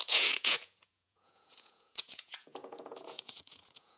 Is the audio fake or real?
fake